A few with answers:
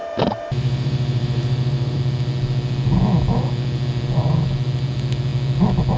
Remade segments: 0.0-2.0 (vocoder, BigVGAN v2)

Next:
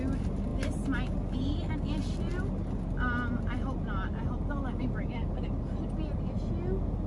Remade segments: none

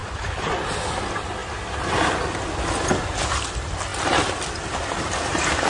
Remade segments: 0.0-0.5 (codec, HILCodec)